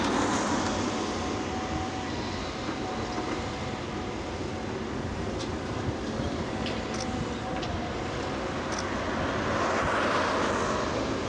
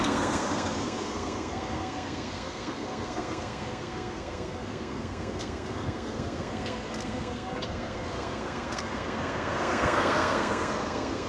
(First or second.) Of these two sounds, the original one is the first